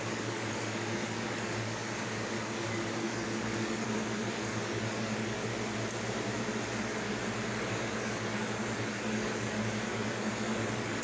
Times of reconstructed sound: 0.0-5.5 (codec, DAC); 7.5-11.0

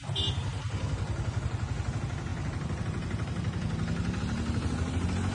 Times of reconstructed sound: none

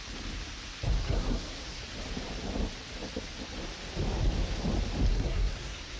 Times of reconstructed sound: 1.0-1.8 (codec, SNAC); 5.1-6.0

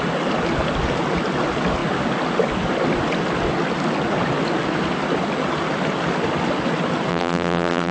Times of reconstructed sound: 7.1-7.9 (vocoder, BigVGAN v2)